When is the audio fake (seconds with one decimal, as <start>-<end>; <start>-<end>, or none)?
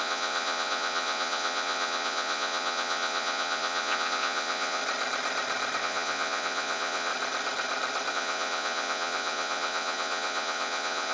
0.0-4.8; 5.8-7.1; 8.1-11.1